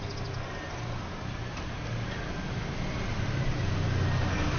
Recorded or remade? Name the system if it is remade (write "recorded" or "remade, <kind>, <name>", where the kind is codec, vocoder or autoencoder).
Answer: recorded